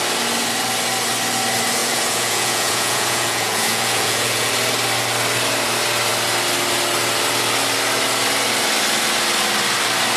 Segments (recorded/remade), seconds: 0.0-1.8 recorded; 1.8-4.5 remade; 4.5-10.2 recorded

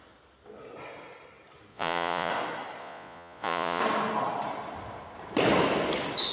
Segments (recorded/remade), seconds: 0.0-1.7 recorded; 1.7-2.3 remade; 2.3-2.8 recorded; 2.8-3.8 remade; 3.8-6.3 recorded

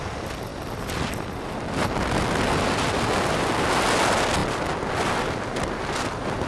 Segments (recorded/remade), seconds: 0.0-6.5 recorded

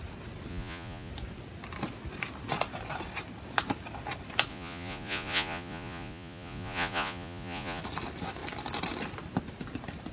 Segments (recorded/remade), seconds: 0.0-0.5 recorded; 0.5-1.1 remade; 1.1-4.5 recorded; 4.5-7.8 remade; 7.8-10.1 recorded

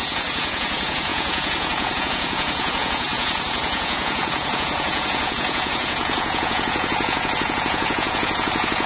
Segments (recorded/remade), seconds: 0.0-8.9 remade

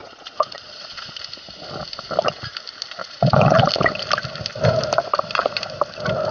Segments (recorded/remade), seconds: 0.0-1.2 remade; 1.2-3.0 recorded; 3.0-3.7 remade; 3.7-6.3 recorded

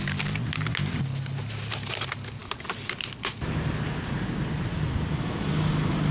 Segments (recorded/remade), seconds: 0.0-6.1 recorded